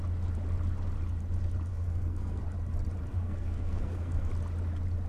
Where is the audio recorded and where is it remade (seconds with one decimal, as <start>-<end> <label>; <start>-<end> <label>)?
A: 0.0-1.7 recorded; 1.7-2.4 remade; 2.4-3.1 recorded; 3.1-4.3 remade; 4.3-5.1 recorded